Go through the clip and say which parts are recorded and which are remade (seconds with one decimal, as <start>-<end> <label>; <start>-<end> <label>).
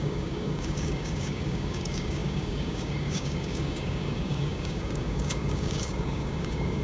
0.0-6.8 remade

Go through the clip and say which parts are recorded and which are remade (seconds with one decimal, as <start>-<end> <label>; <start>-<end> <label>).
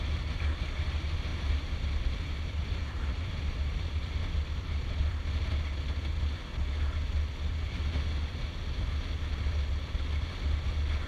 0.0-1.3 recorded; 1.3-5.5 remade; 5.5-11.1 recorded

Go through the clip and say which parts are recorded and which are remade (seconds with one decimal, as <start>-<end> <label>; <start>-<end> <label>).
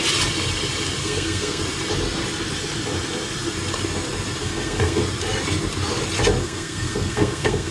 0.0-1.0 recorded; 1.0-1.6 remade; 1.6-4.4 recorded; 4.4-5.0 remade; 5.0-6.4 recorded; 6.4-7.7 remade